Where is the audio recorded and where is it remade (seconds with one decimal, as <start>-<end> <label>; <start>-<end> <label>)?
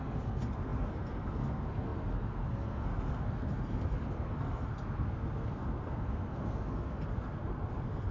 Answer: 0.0-8.1 remade